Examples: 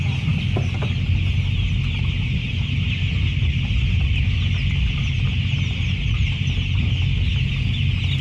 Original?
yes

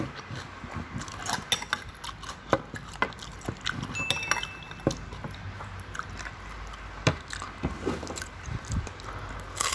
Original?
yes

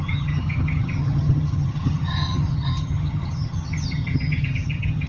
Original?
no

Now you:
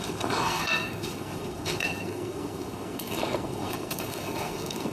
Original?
no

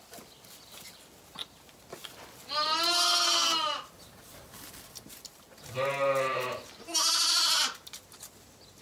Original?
yes